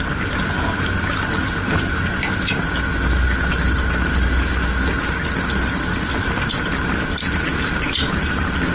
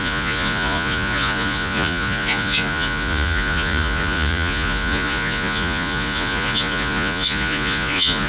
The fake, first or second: second